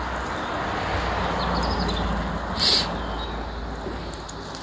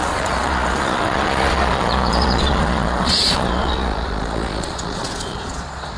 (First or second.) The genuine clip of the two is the first